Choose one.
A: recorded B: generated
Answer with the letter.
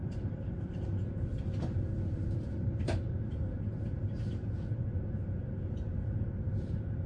B